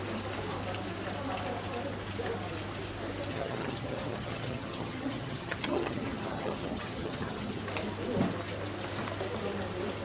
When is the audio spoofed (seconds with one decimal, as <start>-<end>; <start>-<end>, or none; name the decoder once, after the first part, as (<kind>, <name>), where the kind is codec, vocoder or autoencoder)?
3.3-7.6 (vocoder, HiFi-GAN)